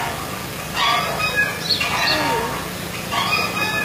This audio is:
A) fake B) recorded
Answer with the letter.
B